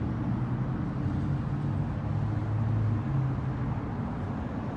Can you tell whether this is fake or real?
real